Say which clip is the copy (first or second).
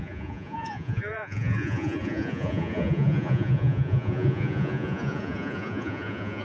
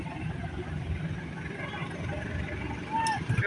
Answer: first